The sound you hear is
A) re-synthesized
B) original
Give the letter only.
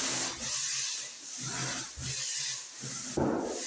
B